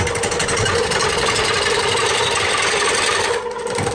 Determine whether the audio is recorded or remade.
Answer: recorded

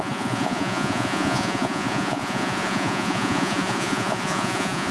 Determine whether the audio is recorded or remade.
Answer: remade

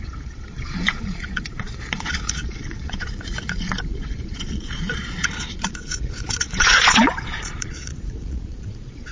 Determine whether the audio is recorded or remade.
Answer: remade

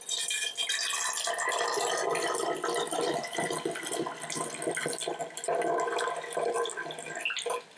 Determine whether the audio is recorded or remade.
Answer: recorded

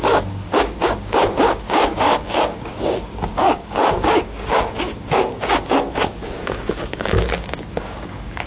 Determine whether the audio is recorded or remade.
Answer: remade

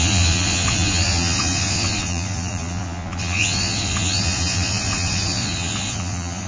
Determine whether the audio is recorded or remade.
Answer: remade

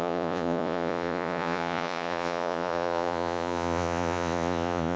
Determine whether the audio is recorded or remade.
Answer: remade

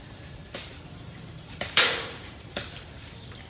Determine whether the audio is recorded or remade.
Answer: remade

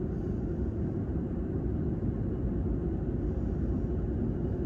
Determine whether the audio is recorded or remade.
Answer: recorded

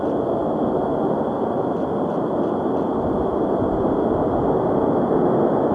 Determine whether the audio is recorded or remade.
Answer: recorded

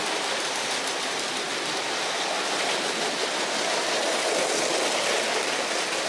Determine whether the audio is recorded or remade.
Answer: recorded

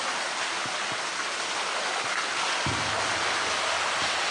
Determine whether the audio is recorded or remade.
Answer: recorded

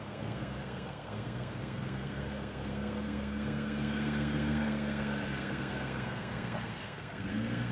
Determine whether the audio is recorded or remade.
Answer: remade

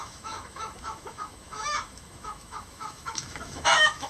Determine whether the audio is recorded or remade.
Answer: remade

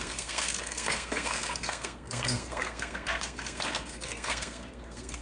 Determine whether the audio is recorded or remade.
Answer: remade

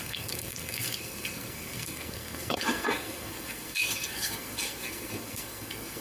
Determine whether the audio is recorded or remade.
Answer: remade